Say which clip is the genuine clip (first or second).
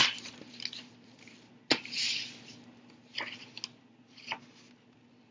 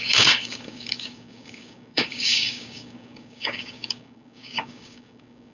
first